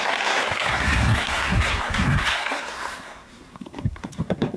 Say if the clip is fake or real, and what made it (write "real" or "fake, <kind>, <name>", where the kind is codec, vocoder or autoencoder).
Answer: fake, codec, SNAC